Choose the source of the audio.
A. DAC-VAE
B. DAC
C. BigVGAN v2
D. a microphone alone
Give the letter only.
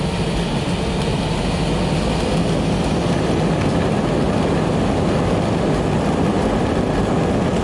D